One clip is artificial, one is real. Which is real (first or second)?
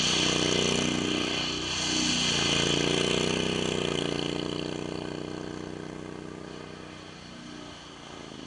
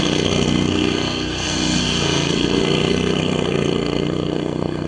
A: first